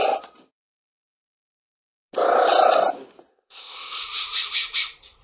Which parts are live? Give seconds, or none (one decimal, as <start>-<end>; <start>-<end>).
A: 0.0-3.3; 4.0-5.2